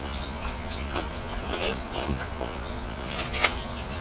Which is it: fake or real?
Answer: fake